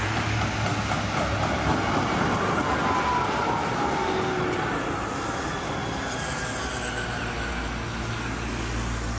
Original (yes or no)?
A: yes